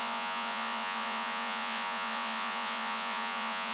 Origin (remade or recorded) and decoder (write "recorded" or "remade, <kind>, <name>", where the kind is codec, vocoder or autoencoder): remade, vocoder, Vocos